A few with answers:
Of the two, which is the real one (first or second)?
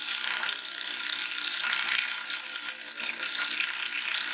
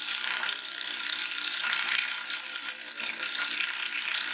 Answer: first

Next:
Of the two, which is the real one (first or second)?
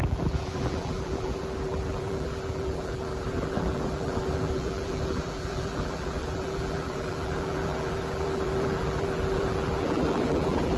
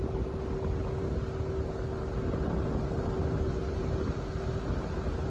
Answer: second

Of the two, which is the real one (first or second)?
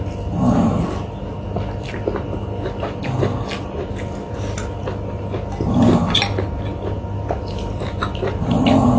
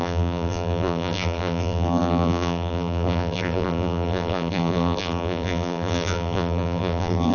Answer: first